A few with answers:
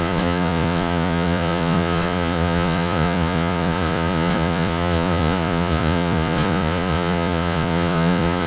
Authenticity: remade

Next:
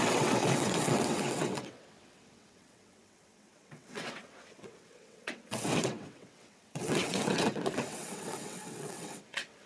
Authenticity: remade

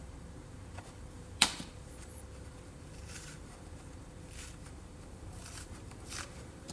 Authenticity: remade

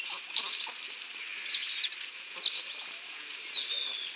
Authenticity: recorded